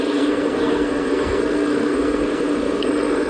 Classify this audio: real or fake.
fake